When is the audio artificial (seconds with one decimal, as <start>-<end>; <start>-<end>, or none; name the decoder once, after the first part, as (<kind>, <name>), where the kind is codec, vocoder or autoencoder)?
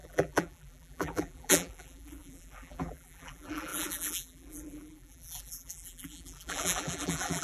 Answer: 0.0-7.4 (vocoder, BigVGAN v2)